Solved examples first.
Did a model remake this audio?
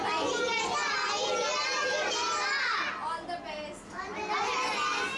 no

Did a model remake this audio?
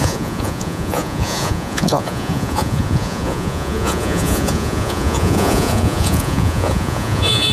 yes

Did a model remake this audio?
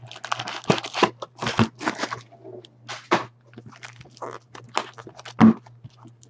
no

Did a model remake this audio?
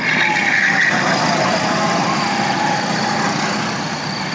no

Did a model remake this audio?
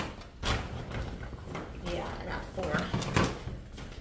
no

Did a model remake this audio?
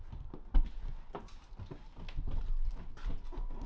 no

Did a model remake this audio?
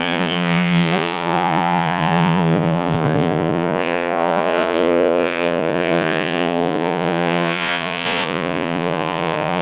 yes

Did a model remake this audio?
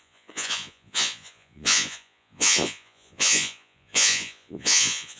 yes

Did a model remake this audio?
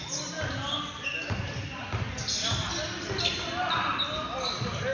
no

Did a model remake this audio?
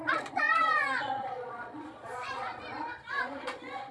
yes